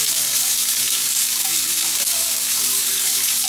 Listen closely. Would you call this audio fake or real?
fake